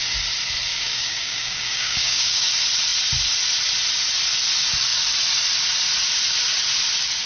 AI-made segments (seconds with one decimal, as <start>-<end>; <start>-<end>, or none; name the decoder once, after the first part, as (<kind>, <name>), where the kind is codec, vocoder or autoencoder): 0.7-2.5 (codec, DAC)